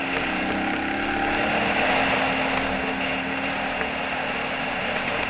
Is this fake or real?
real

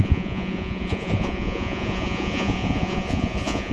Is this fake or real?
fake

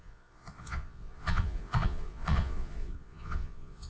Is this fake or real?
fake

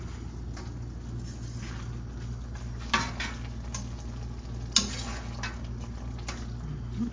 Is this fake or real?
real